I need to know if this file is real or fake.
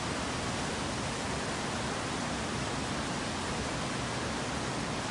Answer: real